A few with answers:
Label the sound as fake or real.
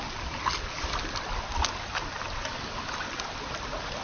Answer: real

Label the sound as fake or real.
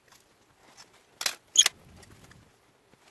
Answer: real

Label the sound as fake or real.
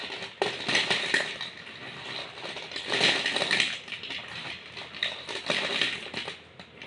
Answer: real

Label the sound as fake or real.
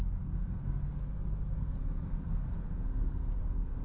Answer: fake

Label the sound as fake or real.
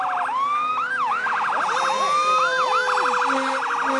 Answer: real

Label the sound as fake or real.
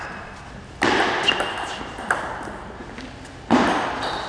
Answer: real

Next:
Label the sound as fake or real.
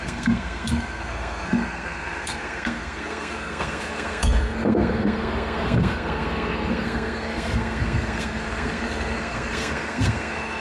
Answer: fake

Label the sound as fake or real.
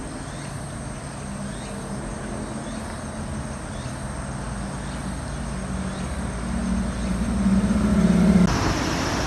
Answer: real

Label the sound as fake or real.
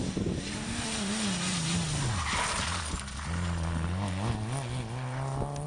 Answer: real